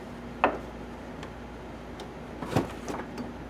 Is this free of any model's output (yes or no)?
yes